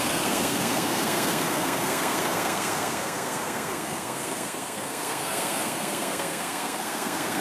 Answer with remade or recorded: remade